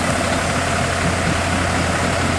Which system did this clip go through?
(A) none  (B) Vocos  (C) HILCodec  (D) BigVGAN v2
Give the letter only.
A